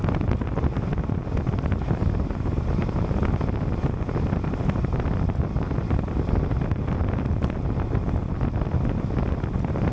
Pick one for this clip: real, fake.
real